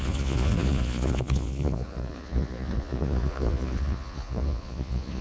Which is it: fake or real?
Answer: fake